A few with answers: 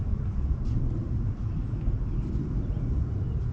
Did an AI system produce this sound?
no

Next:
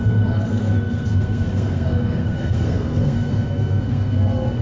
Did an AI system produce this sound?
yes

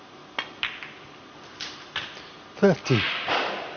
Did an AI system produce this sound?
no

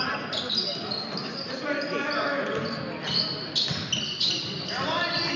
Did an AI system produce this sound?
no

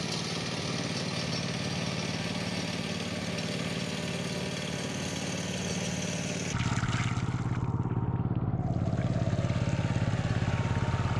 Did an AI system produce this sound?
no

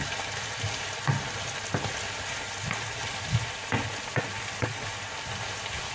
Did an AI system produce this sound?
no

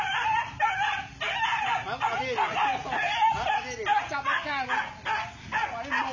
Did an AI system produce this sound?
no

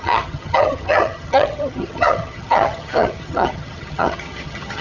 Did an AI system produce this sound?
yes